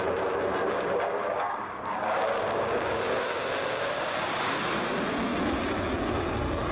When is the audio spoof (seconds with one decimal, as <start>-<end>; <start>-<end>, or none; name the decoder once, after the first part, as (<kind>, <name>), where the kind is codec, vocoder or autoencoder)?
0.6-4.6 (codec, DAC)